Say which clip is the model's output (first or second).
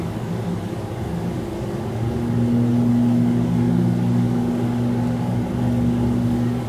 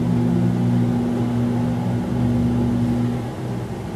first